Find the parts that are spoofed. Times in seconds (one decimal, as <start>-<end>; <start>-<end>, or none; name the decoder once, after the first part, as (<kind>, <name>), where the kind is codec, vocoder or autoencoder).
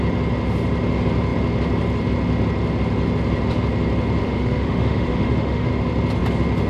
4.2-5.7 (autoencoder, DAC-VAE)